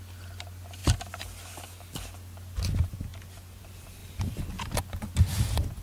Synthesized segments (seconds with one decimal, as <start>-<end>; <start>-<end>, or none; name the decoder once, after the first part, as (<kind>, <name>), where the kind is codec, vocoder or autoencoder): 0.8-2.6 (vocoder, BigVGAN v2); 3.1-3.6; 4.0-4.8